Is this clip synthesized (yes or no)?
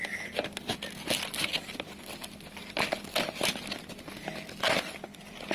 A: no